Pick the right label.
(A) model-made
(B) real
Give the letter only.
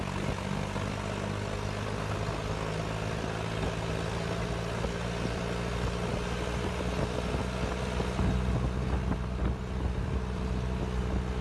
B